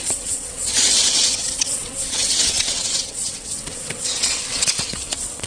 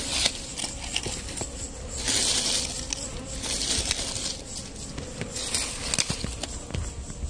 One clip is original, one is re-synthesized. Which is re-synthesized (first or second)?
first